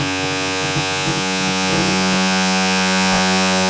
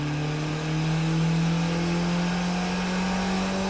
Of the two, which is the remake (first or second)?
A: first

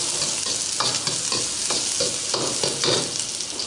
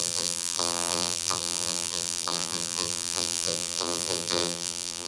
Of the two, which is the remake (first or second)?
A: second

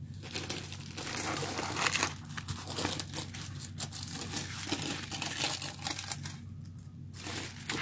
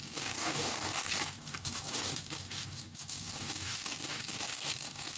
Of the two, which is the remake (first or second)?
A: second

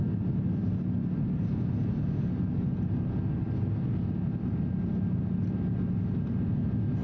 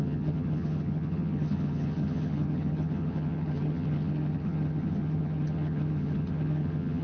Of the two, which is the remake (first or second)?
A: second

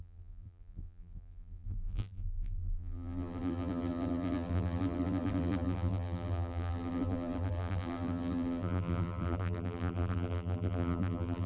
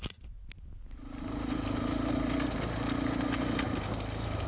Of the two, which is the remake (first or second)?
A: first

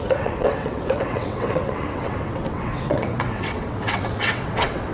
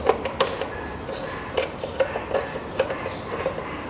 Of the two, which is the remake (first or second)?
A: first